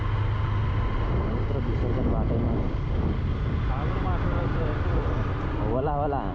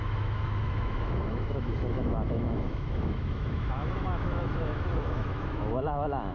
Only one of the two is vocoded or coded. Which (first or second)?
second